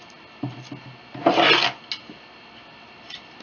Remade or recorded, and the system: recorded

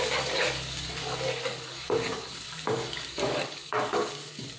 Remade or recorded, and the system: remade, codec, DAC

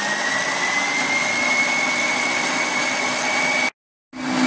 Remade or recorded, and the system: recorded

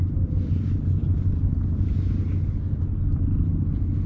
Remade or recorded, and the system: recorded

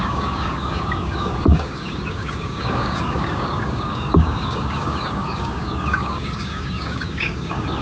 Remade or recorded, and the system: remade, codec, DAC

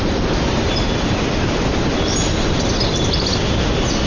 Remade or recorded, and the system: recorded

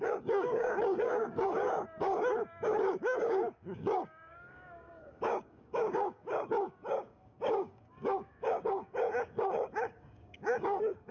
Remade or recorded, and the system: remade, codec, DAC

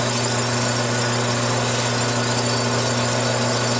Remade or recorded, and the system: recorded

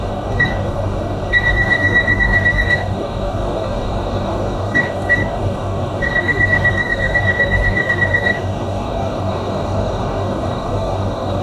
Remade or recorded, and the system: remade, codec, DAC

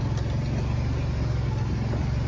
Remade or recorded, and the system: recorded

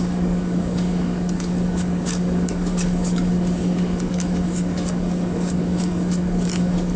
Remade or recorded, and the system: remade, codec, DAC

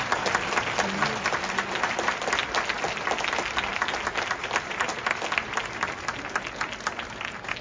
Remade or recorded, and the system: recorded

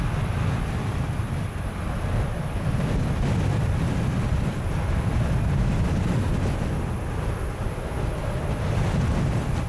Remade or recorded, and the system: recorded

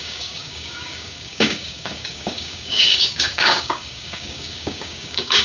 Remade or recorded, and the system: remade, codec, DAC